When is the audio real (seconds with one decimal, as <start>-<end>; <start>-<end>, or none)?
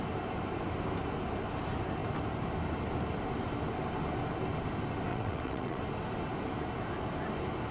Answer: 0.0-5.1; 5.8-7.7